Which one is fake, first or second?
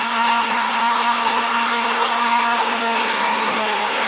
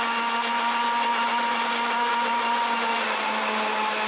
first